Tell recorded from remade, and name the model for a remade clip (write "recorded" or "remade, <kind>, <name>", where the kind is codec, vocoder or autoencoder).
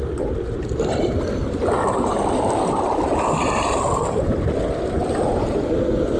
recorded